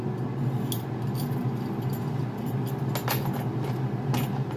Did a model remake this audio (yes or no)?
no